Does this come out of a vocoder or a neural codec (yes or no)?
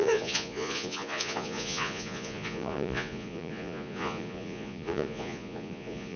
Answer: yes